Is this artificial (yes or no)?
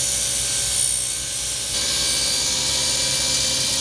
no